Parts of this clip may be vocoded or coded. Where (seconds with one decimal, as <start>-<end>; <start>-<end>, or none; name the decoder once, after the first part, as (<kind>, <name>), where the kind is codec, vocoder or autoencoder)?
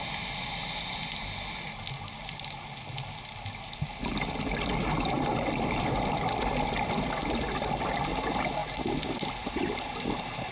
none